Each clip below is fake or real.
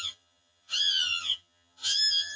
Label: fake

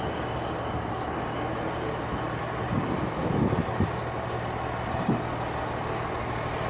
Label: real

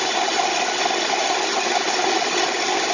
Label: real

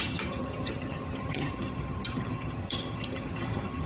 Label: fake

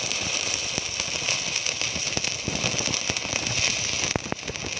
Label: real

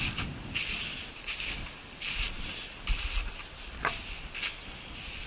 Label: real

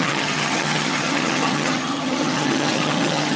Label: fake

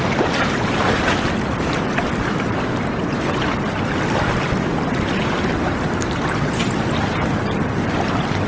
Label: real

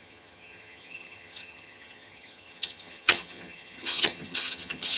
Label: fake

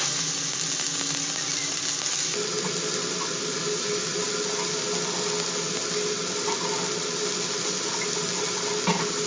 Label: real